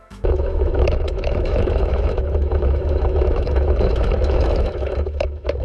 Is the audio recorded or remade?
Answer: remade